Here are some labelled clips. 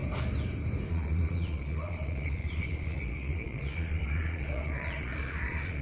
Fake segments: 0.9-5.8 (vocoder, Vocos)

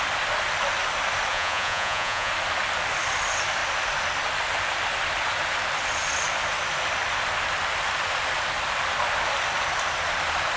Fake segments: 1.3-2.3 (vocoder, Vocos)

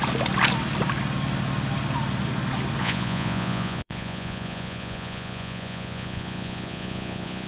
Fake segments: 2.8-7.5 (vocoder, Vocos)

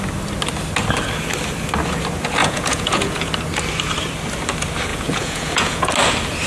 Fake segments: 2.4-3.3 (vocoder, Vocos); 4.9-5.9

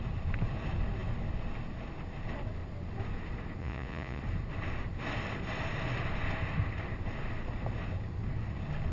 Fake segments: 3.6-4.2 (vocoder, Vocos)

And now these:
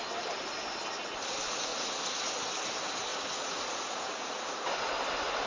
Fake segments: 1.7-2.3 (vocoder, Vocos); 3.1-4.7